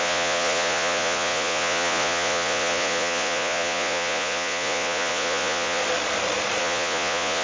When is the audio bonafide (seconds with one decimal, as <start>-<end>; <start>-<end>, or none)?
5.8-6.6